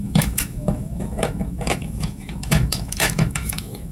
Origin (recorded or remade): remade